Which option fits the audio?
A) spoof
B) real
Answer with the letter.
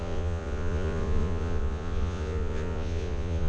A